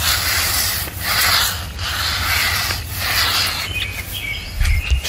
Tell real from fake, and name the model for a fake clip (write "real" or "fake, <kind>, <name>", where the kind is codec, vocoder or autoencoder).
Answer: real